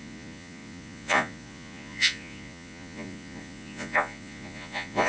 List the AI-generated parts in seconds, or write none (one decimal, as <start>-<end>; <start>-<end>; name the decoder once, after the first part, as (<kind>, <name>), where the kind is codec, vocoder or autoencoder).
0.0-5.1 (vocoder, Vocos)